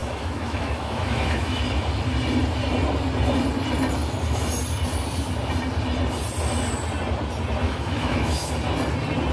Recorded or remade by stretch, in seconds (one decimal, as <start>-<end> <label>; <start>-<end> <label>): 0.0-1.6 remade; 1.6-7.6 recorded; 7.6-8.5 remade; 8.5-9.3 recorded